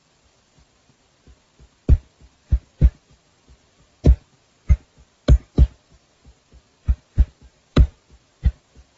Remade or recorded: remade